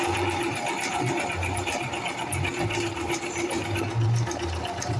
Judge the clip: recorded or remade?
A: remade